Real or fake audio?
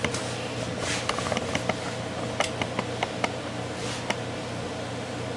real